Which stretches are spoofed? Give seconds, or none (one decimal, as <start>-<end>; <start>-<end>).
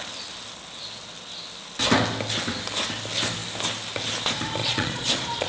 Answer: 4.6-5.5